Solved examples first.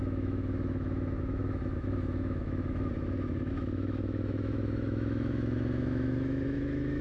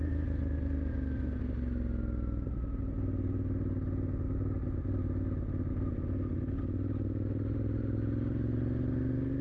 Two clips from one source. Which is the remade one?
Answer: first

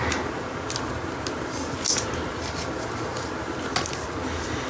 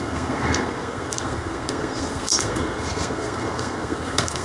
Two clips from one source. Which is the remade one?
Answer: second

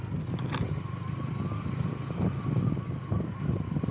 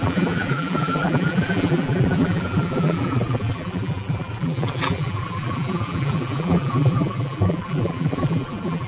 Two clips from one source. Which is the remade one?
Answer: second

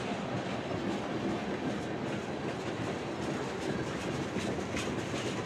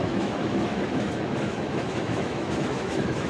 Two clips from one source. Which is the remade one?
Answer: second